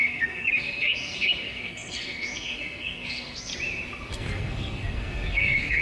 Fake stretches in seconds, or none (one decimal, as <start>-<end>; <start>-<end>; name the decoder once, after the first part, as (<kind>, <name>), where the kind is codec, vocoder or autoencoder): 0.0-3.5 (codec, SNAC); 4.1-5.8